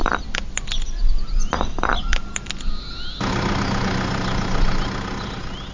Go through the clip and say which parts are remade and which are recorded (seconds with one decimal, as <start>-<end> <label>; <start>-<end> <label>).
0.0-5.7 recorded